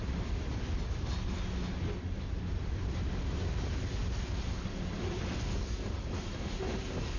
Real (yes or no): yes